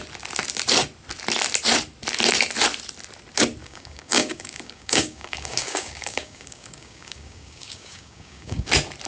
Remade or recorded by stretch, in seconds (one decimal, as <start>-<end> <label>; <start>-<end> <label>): 0.0-3.6 recorded; 3.6-8.7 remade; 8.7-9.1 recorded